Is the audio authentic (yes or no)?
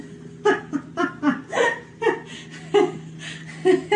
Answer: yes